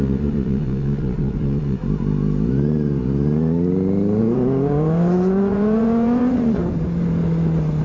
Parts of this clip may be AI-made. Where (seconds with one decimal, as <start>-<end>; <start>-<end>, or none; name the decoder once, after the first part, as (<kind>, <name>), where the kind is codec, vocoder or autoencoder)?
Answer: 0.0-1.8 (vocoder, Vocos); 4.2-6.6